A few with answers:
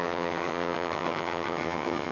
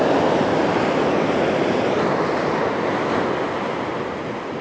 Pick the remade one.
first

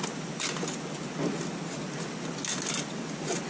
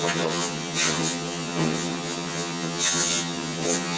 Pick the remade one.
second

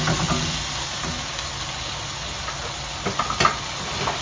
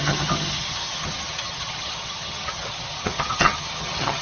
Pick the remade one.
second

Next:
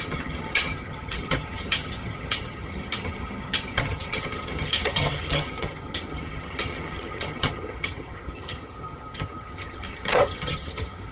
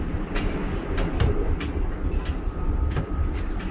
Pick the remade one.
first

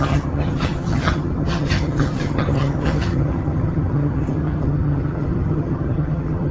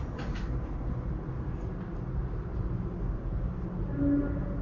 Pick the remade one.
first